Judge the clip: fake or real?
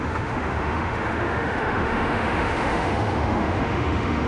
fake